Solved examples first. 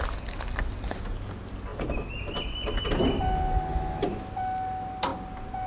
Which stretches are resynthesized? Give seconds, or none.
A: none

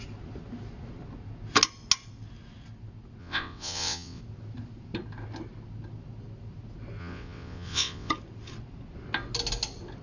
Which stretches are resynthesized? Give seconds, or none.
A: 3.2-4.2 (vocoder, WaveNeXt); 7.0-8.1